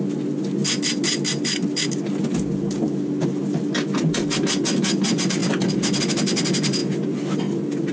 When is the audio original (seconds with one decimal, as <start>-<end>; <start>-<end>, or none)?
0.0-7.9